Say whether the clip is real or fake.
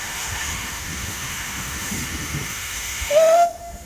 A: fake